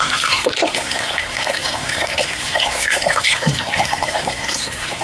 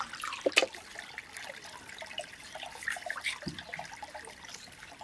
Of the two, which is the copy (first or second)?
first